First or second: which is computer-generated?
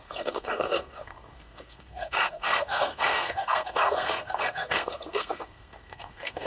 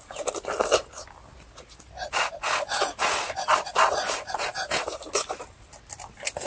first